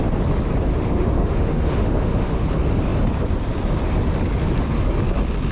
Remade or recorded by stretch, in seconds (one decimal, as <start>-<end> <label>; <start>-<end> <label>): 0.0-0.7 recorded; 0.7-2.5 remade; 2.5-5.5 recorded